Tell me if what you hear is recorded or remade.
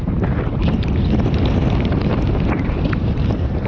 remade